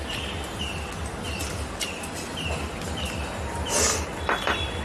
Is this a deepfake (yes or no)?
no